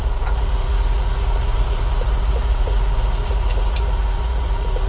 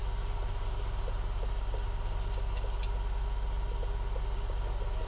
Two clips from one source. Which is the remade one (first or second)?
first